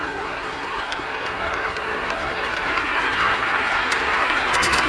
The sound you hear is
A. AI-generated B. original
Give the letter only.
A